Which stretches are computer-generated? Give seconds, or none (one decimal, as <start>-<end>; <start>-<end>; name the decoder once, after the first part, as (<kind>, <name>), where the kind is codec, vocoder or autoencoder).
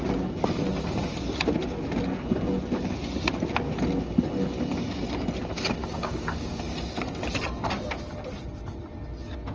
5.8-6.6 (codec, DAC)